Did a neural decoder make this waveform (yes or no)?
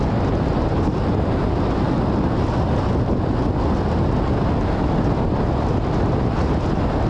no